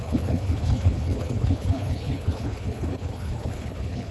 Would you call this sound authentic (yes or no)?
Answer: no